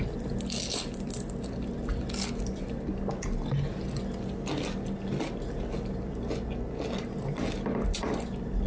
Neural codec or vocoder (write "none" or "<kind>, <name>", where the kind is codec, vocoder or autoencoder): none